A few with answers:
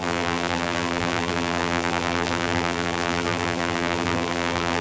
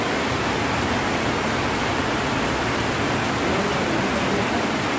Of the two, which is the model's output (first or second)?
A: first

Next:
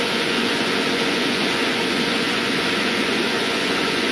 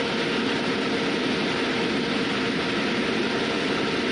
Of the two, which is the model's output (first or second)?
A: first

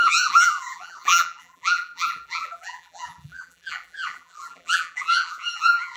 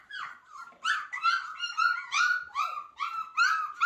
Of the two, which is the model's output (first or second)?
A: first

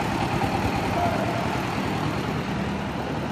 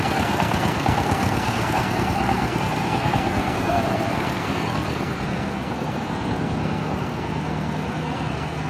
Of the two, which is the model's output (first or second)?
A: second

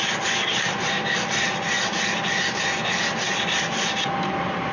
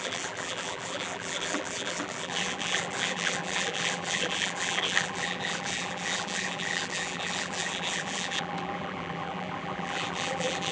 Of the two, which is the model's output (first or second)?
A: second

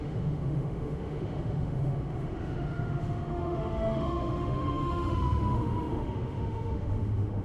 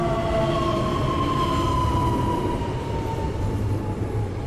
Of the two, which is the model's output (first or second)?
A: first